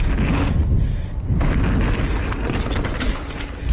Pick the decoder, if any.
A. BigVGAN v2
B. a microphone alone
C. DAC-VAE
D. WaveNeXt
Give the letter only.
B